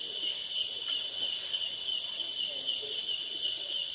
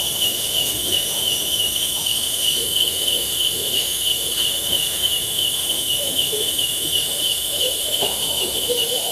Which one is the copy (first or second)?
second